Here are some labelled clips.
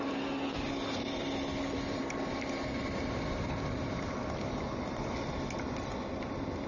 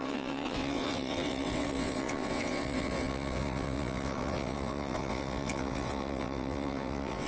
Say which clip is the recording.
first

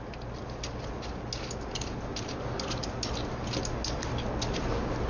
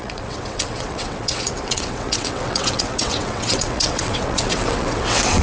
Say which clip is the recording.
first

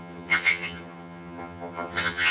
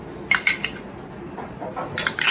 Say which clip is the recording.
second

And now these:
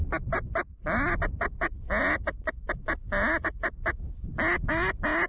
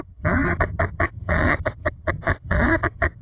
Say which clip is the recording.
first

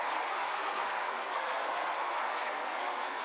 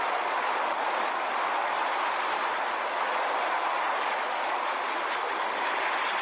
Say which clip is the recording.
second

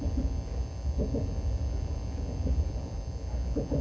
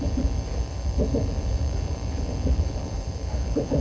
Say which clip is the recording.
first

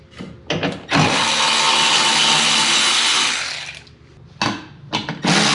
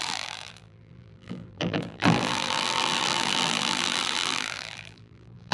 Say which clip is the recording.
first